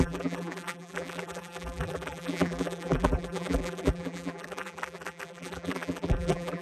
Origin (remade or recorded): remade